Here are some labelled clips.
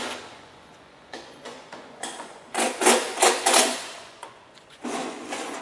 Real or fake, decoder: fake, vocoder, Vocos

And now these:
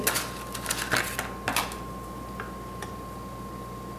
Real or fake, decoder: real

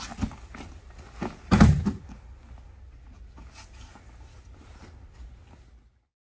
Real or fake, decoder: real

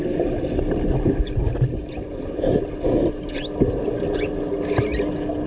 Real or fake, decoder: real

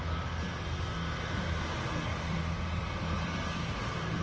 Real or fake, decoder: real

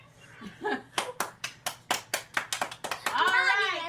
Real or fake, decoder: real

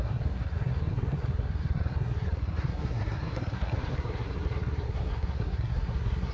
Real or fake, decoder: fake, codec, SNAC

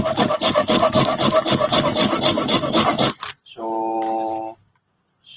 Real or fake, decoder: real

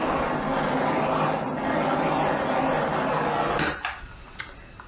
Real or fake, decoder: real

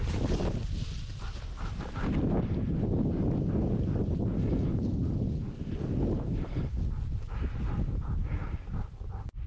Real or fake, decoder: real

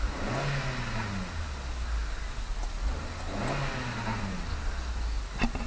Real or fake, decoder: real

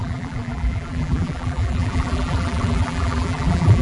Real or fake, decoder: fake, vocoder, BigVGAN v2